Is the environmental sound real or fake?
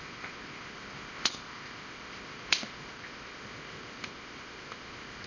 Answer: fake